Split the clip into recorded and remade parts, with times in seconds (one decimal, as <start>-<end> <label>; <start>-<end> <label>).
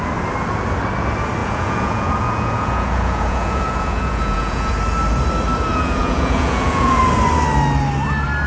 0.0-1.4 recorded; 1.4-4.7 remade; 4.7-5.7 recorded; 5.7-7.0 remade; 7.0-8.5 recorded